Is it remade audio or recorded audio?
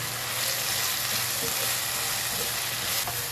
recorded